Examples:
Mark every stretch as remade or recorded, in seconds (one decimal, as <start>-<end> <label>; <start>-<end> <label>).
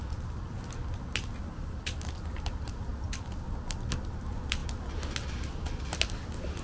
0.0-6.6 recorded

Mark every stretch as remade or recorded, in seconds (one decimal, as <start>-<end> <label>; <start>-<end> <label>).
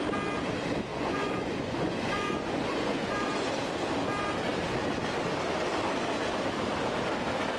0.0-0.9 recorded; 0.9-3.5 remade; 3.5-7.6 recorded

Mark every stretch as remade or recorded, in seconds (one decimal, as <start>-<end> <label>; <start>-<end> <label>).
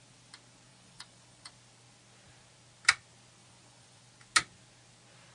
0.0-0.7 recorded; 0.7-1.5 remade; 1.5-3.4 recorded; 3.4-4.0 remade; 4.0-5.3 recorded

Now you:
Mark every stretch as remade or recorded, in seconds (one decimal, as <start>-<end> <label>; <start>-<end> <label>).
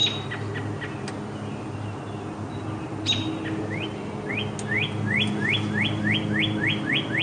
0.0-7.2 recorded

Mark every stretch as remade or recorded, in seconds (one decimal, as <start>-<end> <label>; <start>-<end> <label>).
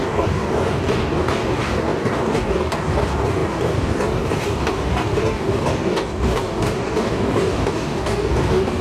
0.0-8.8 remade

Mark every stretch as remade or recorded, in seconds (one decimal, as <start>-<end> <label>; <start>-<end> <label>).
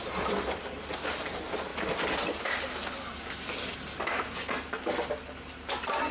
0.0-6.1 recorded